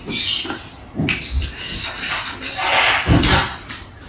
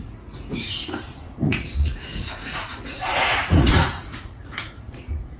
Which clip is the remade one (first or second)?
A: second